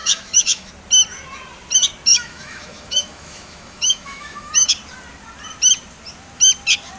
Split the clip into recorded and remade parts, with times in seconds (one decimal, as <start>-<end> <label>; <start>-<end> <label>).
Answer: 0.0-0.7 remade; 0.7-2.1 recorded; 2.1-4.7 remade; 4.7-7.0 recorded